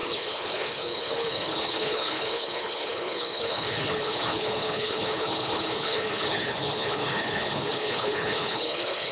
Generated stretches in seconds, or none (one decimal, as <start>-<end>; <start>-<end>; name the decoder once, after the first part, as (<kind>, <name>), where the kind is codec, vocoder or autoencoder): 0.0-9.1 (codec, HILCodec)